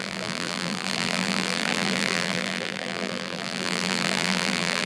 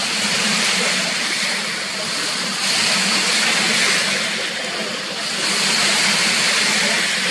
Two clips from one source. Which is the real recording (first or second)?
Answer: second